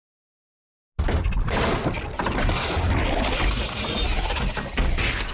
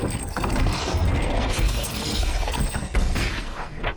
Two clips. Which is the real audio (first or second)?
first